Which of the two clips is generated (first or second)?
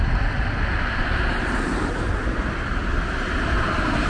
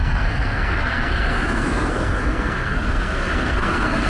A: second